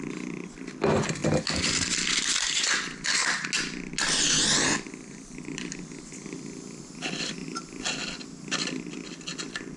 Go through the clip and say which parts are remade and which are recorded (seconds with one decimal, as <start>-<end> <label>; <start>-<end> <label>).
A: 0.0-9.8 recorded